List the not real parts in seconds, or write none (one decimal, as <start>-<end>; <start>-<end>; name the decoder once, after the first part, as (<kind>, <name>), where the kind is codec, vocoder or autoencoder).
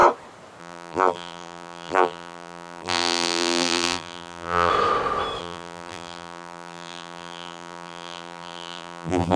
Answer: 0.6-4.7 (vocoder, BigVGAN v2); 5.4-9.4